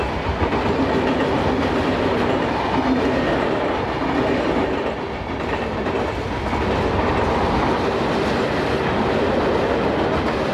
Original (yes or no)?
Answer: yes